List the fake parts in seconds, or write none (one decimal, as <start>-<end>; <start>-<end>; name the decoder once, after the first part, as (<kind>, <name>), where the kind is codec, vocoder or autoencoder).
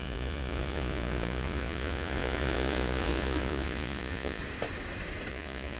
0.0-4.4 (vocoder, Vocos); 5.3-5.8